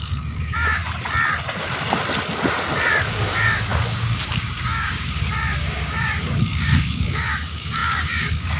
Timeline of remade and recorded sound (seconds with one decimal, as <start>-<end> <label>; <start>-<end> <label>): 0.0-0.8 remade; 0.8-3.1 recorded; 3.1-8.6 remade